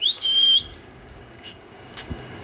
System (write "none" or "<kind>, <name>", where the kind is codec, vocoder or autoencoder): codec, DAC